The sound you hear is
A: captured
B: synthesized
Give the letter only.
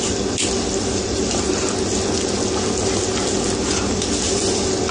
A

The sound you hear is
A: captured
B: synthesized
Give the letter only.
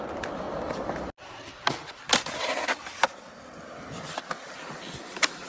A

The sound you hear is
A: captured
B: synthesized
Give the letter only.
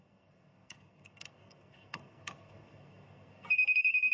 B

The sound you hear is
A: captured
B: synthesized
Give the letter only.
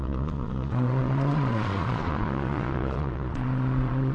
B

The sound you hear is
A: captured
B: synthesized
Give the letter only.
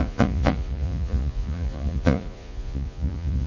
B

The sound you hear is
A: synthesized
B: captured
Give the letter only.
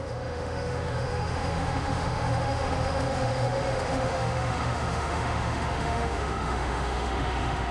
A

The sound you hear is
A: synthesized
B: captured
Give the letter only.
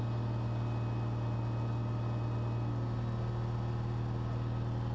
B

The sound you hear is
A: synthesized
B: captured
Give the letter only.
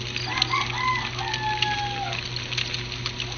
B